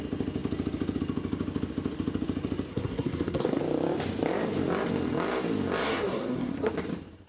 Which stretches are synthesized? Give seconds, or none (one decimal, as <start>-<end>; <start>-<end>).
2.7-3.6; 5.9-6.7